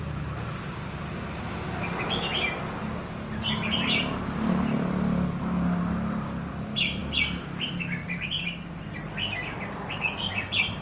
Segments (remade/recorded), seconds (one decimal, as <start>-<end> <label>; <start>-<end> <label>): 0.0-10.8 recorded